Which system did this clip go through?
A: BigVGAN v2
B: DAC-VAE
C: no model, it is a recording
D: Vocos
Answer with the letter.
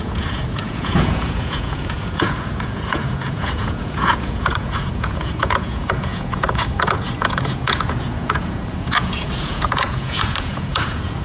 D